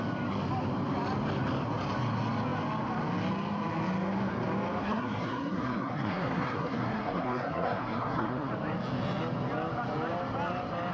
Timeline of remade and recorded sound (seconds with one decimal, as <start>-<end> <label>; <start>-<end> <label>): 0.0-4.8 recorded; 4.8-8.5 remade; 8.5-10.9 recorded